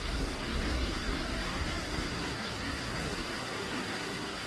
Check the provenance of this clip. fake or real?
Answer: fake